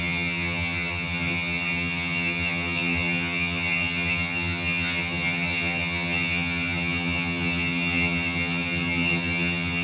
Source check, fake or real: fake